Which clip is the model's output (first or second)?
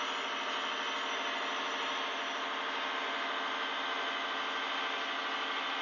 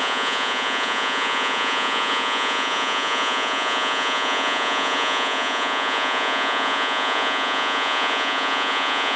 second